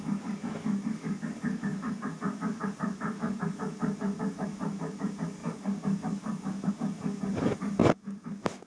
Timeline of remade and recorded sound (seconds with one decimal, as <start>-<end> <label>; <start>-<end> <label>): 0.0-8.7 remade